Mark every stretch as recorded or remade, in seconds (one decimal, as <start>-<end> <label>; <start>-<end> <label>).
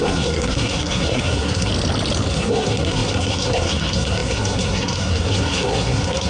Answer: 0.0-1.7 remade; 1.7-2.3 recorded; 2.3-6.3 remade